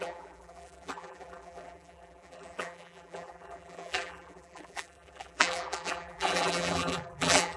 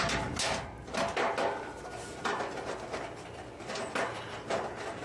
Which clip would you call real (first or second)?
second